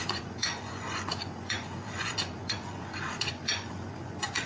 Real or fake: fake